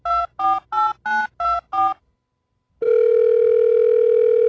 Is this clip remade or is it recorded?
recorded